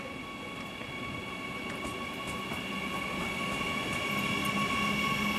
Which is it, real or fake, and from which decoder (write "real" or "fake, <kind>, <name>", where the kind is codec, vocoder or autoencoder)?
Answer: real